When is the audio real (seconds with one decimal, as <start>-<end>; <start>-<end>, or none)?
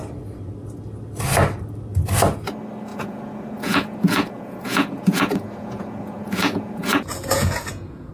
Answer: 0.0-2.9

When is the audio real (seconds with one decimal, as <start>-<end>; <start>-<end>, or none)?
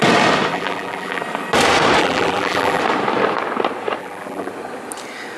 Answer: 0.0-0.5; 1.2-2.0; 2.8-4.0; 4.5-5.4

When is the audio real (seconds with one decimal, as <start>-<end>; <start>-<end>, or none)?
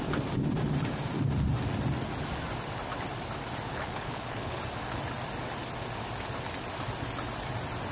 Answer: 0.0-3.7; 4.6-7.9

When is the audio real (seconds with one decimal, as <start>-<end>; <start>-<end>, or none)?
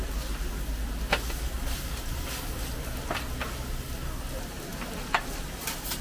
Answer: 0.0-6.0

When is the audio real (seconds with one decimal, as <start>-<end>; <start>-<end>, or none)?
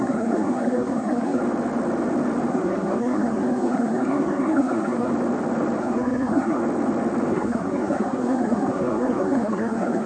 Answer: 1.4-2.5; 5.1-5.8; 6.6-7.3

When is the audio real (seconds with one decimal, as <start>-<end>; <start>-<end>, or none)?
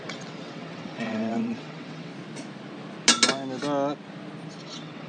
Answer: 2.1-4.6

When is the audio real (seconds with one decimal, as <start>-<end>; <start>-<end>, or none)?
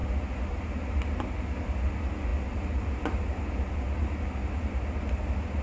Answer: 0.0-5.6